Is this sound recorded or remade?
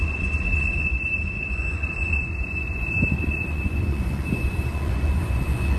remade